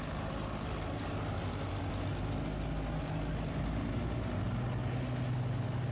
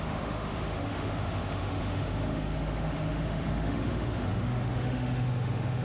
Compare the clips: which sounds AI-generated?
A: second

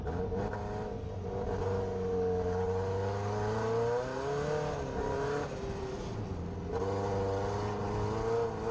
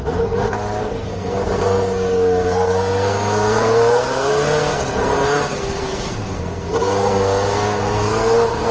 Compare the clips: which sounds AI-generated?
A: second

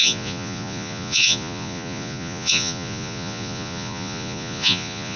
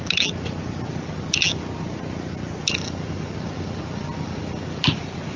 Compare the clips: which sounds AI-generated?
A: first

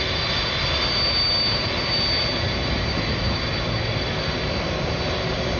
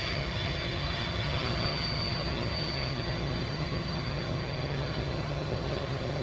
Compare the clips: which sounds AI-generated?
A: second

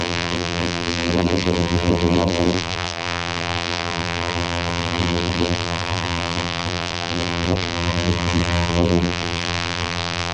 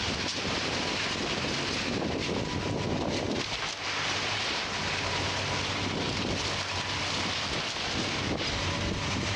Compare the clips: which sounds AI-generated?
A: first